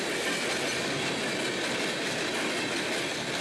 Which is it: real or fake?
real